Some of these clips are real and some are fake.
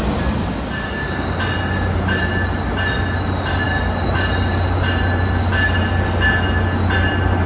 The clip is real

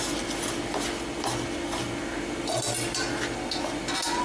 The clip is real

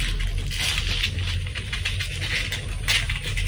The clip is real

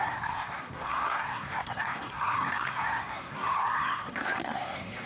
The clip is fake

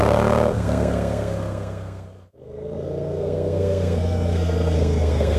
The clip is fake